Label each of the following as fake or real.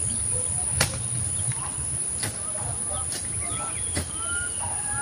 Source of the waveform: real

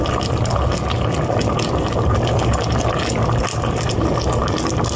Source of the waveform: real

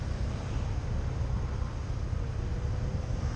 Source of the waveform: real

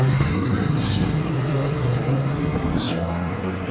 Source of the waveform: fake